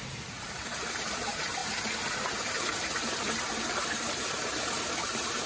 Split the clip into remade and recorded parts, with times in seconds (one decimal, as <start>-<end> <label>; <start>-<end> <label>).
0.0-5.5 remade